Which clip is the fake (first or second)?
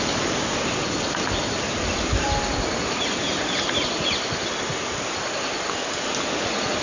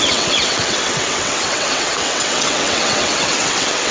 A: second